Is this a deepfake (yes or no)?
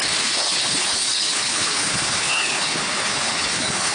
yes